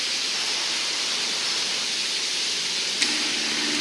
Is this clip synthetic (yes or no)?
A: no